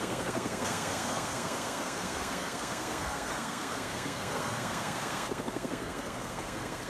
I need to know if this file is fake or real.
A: fake